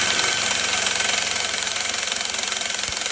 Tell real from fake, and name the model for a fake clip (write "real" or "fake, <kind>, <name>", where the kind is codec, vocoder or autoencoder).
real